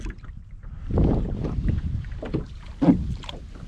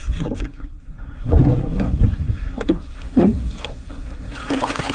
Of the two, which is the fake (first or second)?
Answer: second